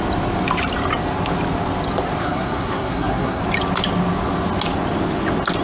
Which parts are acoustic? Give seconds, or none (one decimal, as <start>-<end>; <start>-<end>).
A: 0.0-2.2; 3.4-5.6